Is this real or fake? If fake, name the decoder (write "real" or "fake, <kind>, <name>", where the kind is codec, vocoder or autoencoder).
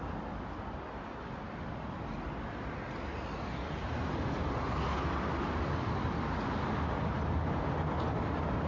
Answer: real